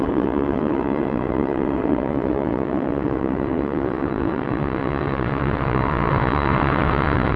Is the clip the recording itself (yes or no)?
no